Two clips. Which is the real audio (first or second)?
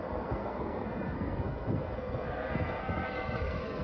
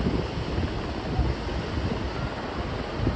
second